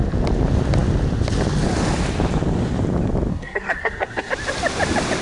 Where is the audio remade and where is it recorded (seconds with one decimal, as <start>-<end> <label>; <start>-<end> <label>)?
0.0-3.3 recorded; 3.3-4.3 remade; 4.3-5.2 recorded